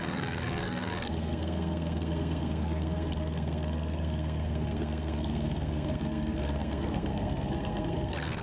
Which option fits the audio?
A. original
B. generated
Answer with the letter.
B